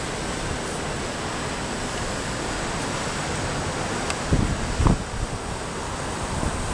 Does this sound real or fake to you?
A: real